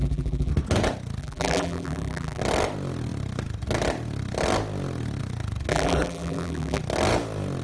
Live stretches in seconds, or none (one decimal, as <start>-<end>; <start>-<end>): 0.5-1.2; 2.4-5.7; 6.8-7.6

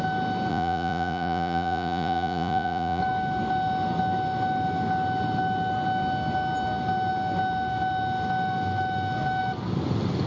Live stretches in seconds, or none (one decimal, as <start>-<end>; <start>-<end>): 0.0-0.5; 3.0-10.3

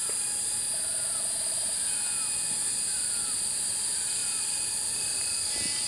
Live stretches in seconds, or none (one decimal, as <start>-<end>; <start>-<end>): 0.0-4.2